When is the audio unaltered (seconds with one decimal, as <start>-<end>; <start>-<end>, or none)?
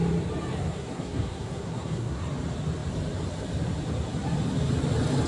0.0-0.6; 2.2-5.3